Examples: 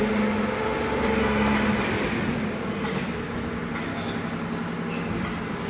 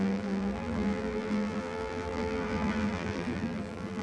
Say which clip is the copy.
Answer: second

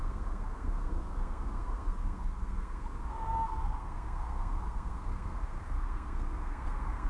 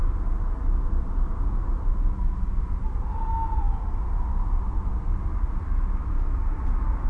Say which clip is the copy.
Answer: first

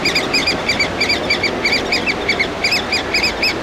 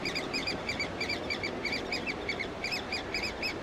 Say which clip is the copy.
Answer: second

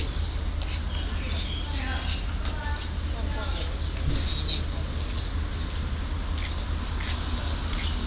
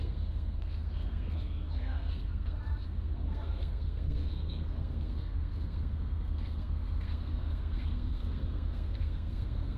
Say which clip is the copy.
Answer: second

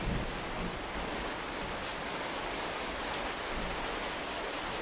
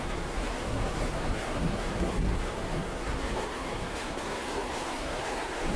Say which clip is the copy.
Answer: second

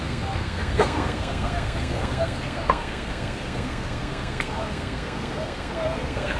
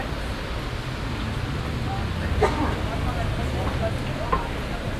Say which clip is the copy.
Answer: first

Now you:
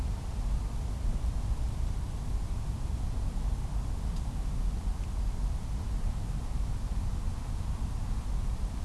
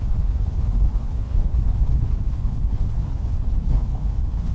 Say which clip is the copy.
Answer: second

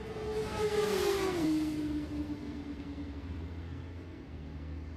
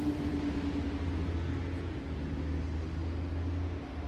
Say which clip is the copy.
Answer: first